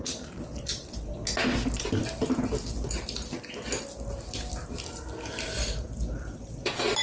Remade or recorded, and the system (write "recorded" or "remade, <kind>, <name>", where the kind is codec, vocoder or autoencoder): recorded